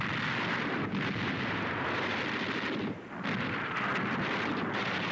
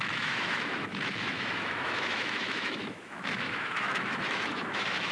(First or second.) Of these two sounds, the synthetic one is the second